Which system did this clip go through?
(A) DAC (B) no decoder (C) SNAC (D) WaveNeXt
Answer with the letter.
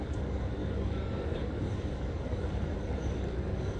A